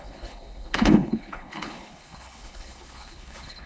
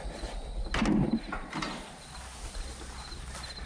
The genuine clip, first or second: second